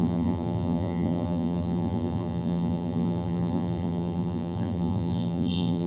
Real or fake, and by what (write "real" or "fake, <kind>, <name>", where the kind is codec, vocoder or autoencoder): fake, vocoder, BigVGAN v2